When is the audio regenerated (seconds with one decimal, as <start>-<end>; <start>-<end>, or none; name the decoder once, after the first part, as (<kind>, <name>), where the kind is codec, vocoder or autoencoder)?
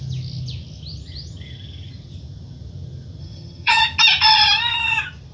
3.2-3.8 (vocoder, HiFi-GAN)